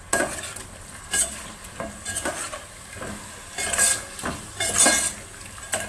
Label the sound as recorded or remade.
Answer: recorded